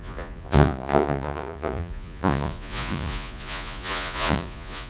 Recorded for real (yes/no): no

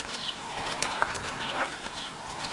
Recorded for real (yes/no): no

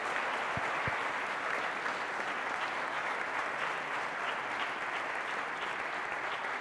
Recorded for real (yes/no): yes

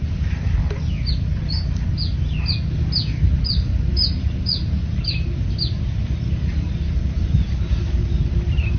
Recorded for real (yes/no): yes